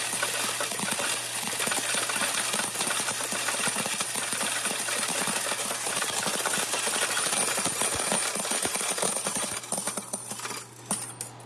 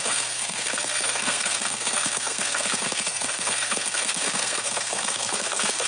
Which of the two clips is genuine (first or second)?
first